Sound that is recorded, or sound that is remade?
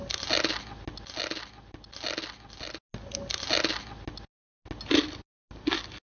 recorded